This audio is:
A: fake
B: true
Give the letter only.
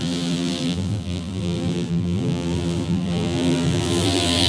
A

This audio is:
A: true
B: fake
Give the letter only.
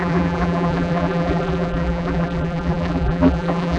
B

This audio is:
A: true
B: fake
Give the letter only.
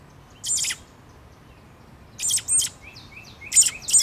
A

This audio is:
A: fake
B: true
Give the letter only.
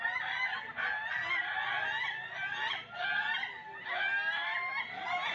B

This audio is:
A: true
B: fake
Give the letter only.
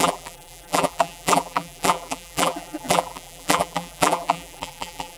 B